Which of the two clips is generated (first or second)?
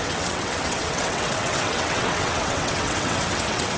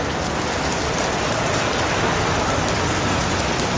first